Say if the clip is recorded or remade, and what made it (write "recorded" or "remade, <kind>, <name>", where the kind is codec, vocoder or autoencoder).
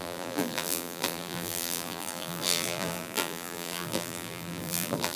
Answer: remade, vocoder, BigVGAN v2